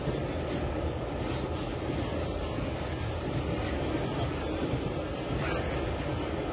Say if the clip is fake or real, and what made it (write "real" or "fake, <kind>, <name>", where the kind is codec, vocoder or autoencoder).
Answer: real